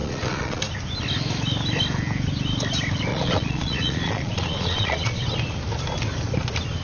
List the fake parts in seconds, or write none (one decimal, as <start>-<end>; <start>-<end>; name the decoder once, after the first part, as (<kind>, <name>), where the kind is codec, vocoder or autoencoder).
0.0-0.6 (vocoder, Vocos); 3.1-5.2